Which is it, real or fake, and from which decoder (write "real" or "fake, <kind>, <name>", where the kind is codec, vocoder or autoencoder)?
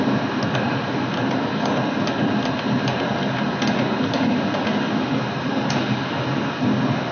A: real